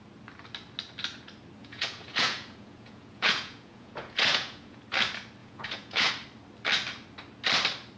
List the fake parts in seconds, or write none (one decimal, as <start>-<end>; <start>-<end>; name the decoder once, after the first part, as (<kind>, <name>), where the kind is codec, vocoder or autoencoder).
1.6-4.8 (vocoder, Vocos); 5.4-6.1